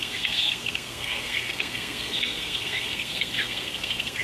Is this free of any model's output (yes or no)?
no